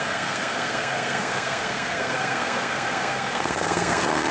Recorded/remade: remade